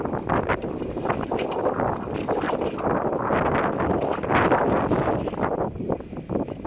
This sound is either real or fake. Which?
real